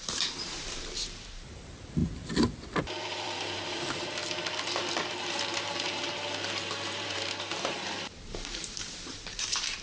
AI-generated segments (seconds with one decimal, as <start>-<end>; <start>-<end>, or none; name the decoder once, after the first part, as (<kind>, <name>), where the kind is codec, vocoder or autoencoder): 0.0-2.0 (vocoder, BigVGAN v2); 2.8-4.2; 5.2-9.8